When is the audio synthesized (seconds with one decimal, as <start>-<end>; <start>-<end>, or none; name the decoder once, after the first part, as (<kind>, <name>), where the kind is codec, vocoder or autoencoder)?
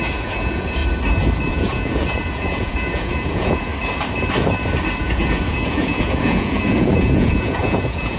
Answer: 0.0-0.8 (vocoder, Vocos); 1.5-3.7; 5.0-8.2